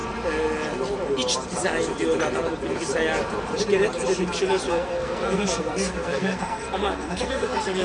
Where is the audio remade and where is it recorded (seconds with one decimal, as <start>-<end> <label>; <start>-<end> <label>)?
0.0-4.7 recorded; 4.7-7.8 remade